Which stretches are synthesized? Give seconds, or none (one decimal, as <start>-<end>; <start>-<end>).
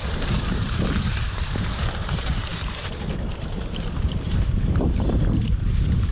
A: 0.0-6.1